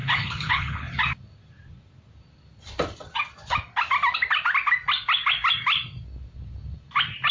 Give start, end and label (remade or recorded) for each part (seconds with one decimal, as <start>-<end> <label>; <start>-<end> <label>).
0.0-0.9 remade; 0.9-7.3 recorded